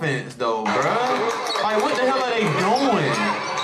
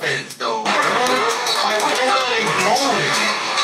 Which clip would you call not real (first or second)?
second